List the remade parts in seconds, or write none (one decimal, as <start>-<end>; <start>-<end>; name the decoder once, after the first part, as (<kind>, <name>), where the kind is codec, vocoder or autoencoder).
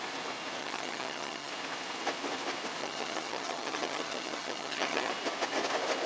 0.6-1.5 (vocoder, HiFi-GAN); 2.8-5.1